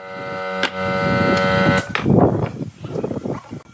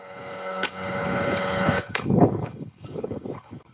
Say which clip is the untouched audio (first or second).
first